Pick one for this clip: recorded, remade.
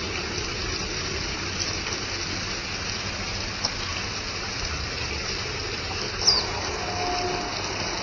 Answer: recorded